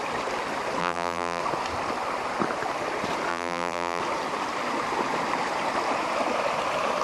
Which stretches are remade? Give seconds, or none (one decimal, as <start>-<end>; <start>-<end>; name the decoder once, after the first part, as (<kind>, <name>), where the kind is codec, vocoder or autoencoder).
0.8-1.4 (vocoder, BigVGAN v2); 3.3-4.0